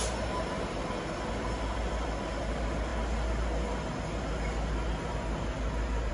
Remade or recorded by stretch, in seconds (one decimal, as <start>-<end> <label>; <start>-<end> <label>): 0.0-6.1 recorded